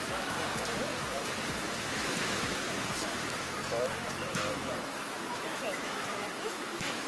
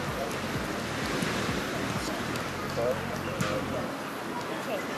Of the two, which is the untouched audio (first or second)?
second